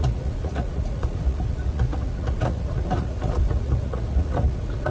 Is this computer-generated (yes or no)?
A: yes